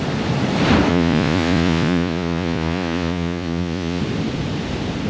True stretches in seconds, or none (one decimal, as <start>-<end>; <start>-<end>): 0.0-0.9; 4.0-5.1